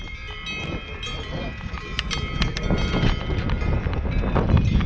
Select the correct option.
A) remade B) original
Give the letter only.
B